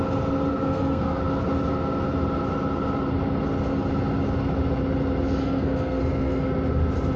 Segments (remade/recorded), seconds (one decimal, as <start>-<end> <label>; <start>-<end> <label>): 0.0-0.5 recorded; 0.5-1.2 remade; 1.2-5.4 recorded; 5.4-6.5 remade; 6.5-7.2 recorded